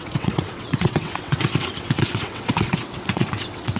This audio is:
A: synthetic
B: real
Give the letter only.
A